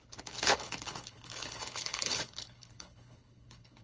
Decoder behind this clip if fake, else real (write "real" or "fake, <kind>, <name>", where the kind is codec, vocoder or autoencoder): fake, codec, HILCodec